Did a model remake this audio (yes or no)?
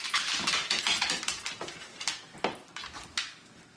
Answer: no